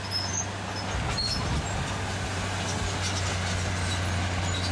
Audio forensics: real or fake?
real